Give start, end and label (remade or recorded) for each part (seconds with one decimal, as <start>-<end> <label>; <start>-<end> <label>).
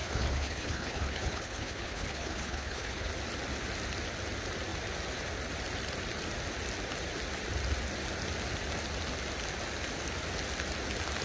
0.0-3.1 remade; 3.1-11.2 recorded